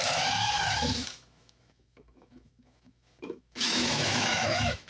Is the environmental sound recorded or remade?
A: remade